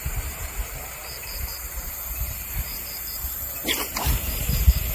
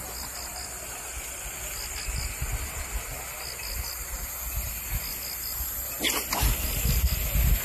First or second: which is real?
second